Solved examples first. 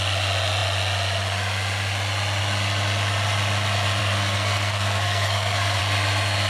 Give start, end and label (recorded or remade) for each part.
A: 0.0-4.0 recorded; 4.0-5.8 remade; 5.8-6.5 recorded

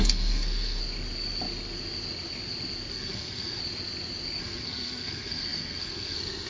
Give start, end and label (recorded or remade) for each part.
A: 0.0-0.8 remade; 0.8-2.9 recorded; 2.9-3.6 remade; 3.6-4.4 recorded; 4.4-6.5 remade

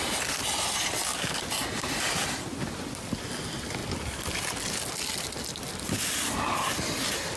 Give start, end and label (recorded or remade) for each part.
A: 0.0-7.4 recorded

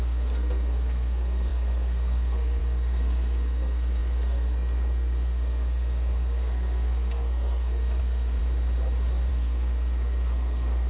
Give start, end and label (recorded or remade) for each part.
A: 0.0-8.4 remade; 8.4-9.3 recorded; 9.3-10.9 remade

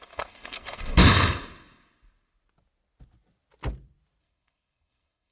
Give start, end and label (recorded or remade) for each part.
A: 0.0-1.0 remade; 1.0-4.2 recorded; 4.2-5.3 remade